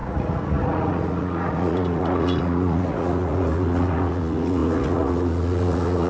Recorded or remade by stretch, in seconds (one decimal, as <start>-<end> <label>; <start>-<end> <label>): 0.0-6.1 remade

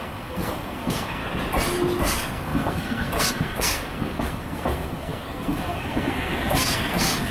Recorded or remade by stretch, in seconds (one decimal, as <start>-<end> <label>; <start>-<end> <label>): 0.0-1.2 remade; 1.2-2.0 recorded; 2.0-7.3 remade

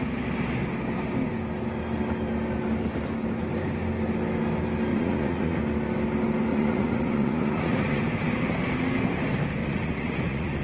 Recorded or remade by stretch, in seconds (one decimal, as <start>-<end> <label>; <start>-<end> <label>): 0.0-4.9 recorded; 4.9-5.6 remade; 5.6-6.5 recorded; 6.5-8.0 remade; 8.0-9.6 recorded; 9.6-10.6 remade

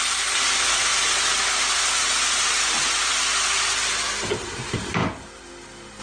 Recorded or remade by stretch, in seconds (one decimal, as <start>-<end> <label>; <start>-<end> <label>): 0.0-0.9 remade; 0.9-3.1 recorded; 3.1-5.0 remade; 5.0-6.0 recorded

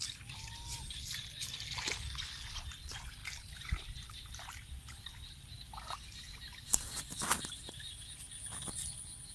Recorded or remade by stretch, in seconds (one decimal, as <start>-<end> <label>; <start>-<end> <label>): 0.0-9.3 recorded